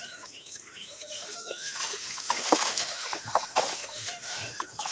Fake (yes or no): yes